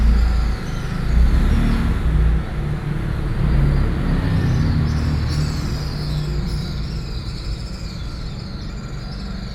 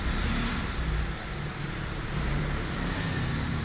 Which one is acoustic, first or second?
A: first